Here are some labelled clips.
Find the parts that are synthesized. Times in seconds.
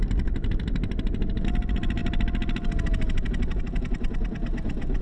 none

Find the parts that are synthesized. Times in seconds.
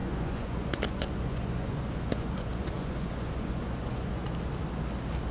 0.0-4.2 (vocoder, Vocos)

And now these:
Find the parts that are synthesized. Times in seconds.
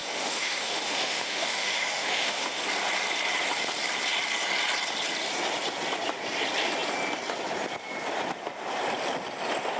0.0-2.6 (autoencoder, DAC-VAE)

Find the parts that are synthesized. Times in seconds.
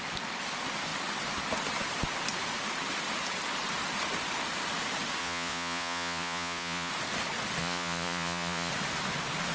5.2-6.9 (vocoder, Vocos); 7.6-8.7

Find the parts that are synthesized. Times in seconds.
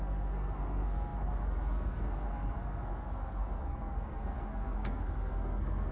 0.0-5.9 (codec, SNAC)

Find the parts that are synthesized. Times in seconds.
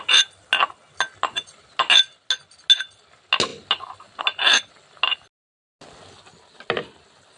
none